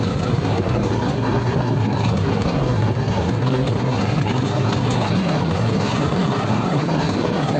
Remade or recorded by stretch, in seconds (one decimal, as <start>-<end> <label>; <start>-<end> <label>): 0.0-7.6 remade